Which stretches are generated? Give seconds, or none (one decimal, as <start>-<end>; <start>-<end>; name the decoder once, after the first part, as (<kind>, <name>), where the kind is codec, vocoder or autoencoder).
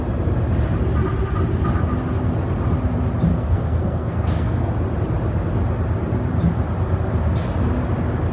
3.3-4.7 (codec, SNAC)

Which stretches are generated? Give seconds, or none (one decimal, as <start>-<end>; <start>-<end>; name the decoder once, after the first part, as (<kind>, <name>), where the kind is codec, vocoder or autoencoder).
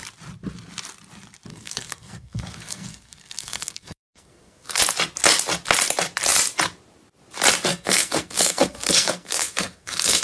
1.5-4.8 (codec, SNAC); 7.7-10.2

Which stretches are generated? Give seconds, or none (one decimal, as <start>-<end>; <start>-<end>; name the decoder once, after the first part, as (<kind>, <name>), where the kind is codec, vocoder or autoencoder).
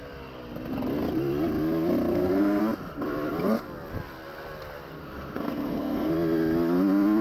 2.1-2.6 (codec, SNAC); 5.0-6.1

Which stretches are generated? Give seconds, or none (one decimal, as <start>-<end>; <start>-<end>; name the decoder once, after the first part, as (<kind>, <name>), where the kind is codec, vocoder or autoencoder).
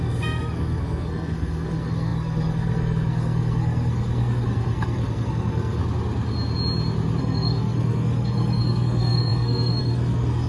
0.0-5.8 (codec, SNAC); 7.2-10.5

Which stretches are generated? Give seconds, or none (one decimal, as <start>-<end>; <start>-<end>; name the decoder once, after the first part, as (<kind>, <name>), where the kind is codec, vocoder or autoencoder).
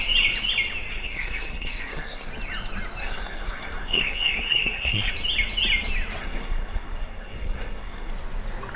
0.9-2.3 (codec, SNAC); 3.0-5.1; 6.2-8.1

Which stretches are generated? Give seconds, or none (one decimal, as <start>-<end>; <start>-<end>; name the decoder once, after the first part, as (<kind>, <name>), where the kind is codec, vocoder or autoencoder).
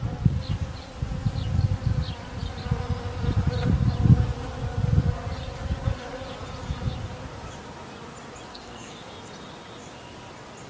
8.5-9.0 (codec, SNAC)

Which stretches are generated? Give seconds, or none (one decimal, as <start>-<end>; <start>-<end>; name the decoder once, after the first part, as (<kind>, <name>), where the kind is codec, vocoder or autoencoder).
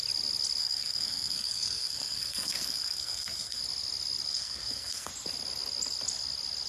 0.6-3.6 (codec, SNAC); 4.3-5.1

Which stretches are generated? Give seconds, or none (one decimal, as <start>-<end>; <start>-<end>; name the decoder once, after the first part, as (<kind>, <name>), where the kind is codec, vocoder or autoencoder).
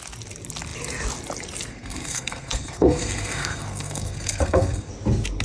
1.7-4.9 (codec, SNAC)